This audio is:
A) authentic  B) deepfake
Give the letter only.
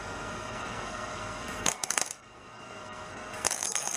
B